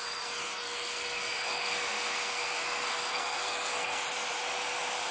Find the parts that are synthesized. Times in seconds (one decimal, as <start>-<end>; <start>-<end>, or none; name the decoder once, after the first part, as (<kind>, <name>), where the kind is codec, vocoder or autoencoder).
0.0-4.0 (codec, SNAC)